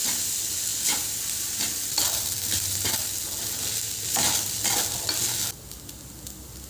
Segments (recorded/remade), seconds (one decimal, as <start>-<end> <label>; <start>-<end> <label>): 0.0-6.7 recorded